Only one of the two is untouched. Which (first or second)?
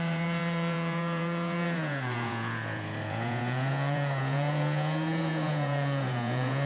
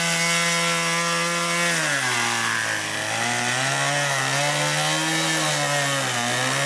second